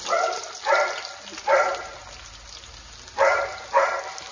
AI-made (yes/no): no